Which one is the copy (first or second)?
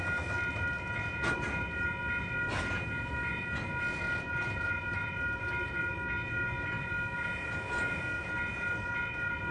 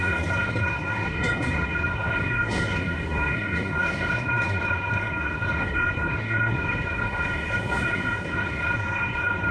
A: second